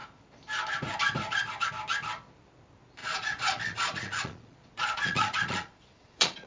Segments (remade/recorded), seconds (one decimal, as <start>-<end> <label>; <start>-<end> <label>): 0.0-3.0 recorded; 3.0-6.5 remade